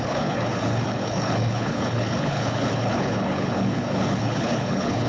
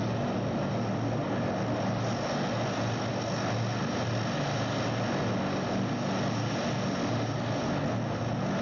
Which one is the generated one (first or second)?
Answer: first